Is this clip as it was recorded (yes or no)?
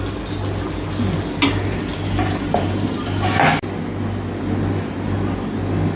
yes